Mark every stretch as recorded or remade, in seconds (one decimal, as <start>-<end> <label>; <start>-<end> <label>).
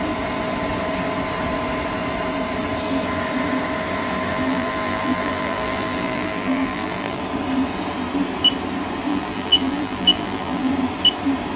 0.0-4.3 recorded; 4.3-7.2 remade; 7.2-9.1 recorded; 9.1-10.7 remade; 10.7-11.6 recorded